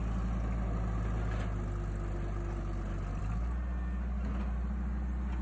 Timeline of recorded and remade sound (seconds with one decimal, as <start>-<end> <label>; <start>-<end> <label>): 0.0-5.4 recorded

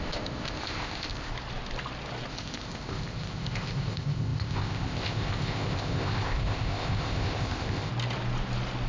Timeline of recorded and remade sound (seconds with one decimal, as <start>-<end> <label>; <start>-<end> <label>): 0.0-1.3 remade; 1.3-2.3 recorded; 2.3-7.9 remade; 7.9-8.9 recorded